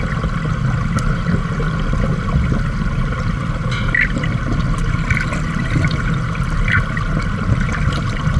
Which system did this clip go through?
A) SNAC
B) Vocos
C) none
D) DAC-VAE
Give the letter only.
C